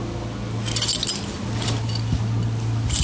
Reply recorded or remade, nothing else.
recorded